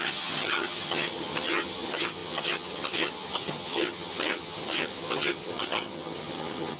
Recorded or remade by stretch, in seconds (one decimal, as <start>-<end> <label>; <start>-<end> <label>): 0.0-6.8 remade